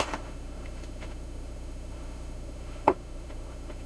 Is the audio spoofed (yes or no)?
yes